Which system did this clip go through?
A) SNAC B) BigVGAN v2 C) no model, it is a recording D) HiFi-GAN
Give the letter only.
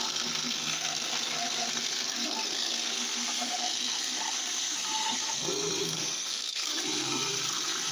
A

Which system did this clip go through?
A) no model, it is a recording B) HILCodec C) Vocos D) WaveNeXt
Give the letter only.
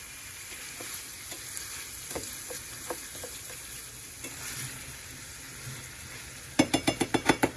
A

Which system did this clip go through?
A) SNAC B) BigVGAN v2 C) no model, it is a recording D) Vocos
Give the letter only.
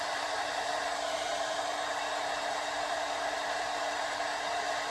B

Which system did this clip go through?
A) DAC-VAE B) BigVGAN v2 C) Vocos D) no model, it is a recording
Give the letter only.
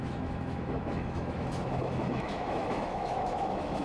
A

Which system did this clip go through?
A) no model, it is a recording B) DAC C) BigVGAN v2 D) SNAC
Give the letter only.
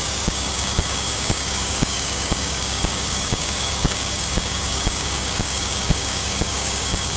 B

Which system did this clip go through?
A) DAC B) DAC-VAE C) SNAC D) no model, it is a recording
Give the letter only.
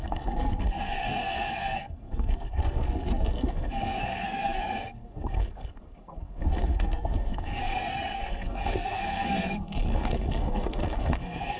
C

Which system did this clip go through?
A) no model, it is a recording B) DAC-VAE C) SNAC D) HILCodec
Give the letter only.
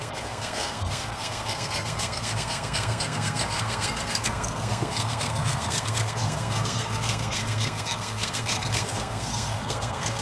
C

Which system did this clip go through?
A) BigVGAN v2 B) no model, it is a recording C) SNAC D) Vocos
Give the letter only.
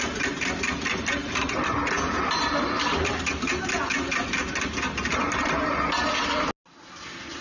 B